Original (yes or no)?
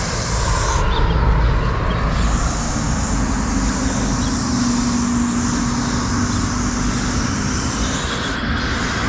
yes